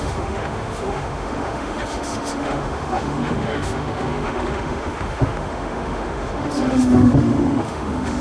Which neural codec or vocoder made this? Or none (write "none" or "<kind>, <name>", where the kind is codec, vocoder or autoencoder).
autoencoder, DAC-VAE